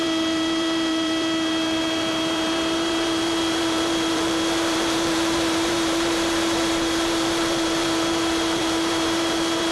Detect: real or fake fake